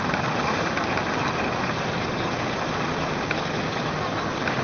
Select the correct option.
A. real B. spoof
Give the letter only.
A